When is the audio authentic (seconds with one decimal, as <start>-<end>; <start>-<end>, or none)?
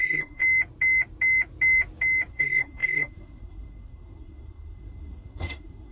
0.4-2.3